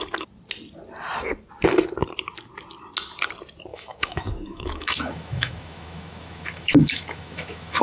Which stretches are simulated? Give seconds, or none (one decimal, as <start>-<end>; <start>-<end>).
3.7-7.8